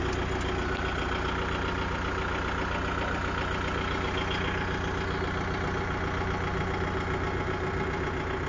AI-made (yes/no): no